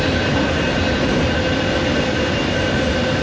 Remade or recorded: recorded